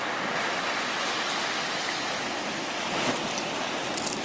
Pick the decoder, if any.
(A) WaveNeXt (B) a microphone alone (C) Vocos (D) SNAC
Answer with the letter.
B